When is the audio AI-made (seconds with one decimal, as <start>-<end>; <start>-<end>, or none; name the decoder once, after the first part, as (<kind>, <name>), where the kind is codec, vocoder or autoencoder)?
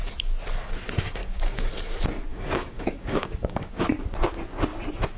1.2-1.7 (codec, DAC); 2.3-3.7